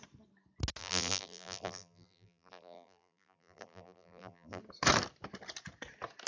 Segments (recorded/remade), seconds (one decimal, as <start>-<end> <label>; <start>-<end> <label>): 0.0-0.8 recorded; 0.8-4.6 remade; 4.6-6.3 recorded